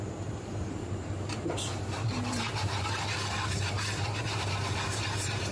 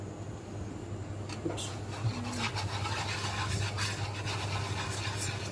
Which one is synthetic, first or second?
first